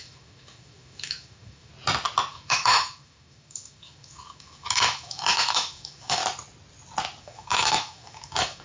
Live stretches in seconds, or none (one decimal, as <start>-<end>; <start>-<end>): 1.7-2.3; 6.2-7.2

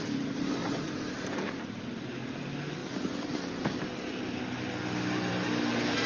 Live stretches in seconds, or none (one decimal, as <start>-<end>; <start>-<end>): 0.0-6.1

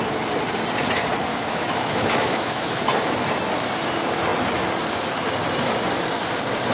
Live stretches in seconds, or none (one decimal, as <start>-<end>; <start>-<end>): 0.0-1.3; 2.8-6.7

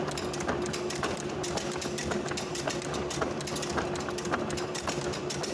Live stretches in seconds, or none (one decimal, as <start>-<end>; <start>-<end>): 0.0-5.5